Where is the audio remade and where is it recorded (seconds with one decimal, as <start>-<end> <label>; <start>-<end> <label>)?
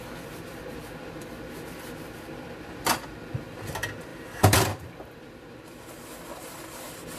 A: 0.0-7.2 remade